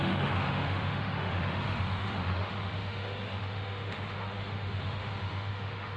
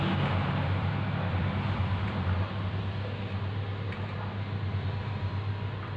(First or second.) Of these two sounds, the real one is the second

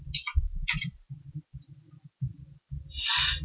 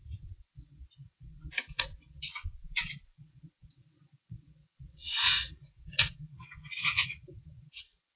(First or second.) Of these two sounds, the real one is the first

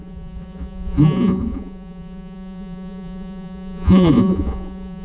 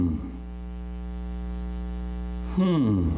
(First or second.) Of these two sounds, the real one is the second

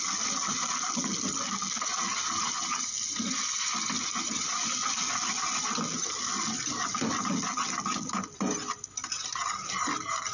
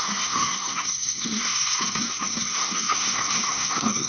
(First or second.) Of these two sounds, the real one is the first